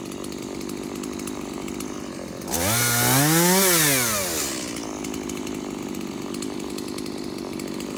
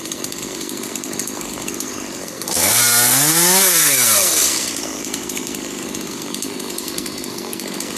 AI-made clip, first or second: second